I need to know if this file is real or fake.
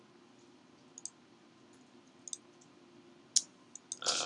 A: real